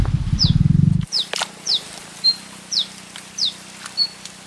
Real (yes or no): yes